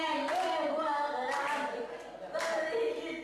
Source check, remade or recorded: recorded